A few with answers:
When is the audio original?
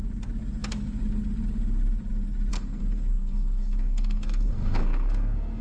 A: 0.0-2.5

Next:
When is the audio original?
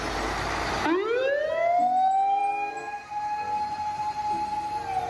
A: 0.0-5.1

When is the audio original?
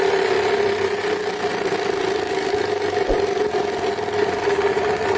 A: 0.0-5.2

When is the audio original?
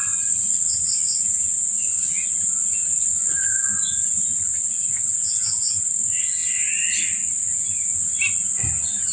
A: 0.0-5.1; 5.9-9.1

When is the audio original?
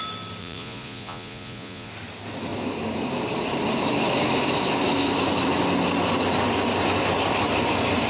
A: 0.0-0.4; 1.9-8.1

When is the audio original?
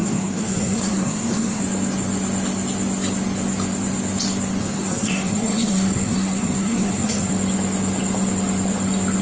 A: 1.6-4.6; 7.3-9.2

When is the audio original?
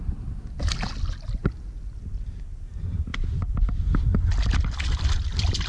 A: 0.0-5.7